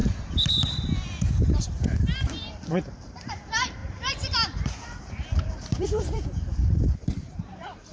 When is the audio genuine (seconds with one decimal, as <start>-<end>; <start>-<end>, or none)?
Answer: 0.9-1.4